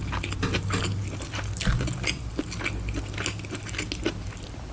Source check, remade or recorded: recorded